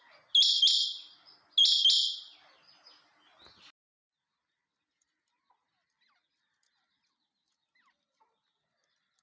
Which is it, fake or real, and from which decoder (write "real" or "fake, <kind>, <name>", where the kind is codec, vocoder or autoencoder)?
real